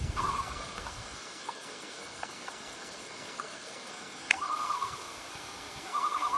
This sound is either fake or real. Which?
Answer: fake